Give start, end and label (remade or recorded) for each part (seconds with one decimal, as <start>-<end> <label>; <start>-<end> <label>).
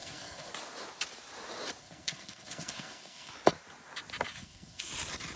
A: 0.0-0.5 remade; 0.5-1.8 recorded; 1.8-3.3 remade; 3.3-4.3 recorded; 4.3-4.9 remade; 4.9-5.4 recorded